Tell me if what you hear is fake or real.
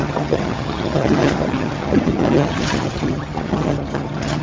fake